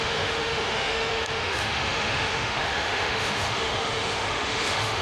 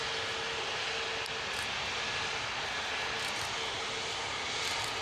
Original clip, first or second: second